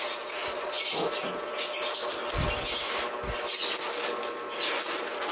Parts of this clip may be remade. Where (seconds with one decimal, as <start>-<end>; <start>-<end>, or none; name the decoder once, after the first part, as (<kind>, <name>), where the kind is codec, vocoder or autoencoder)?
none